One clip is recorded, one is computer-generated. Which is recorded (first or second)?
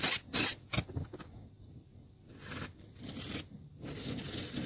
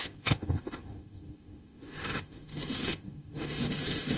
first